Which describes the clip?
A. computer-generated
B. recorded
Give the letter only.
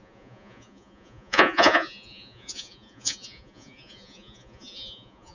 A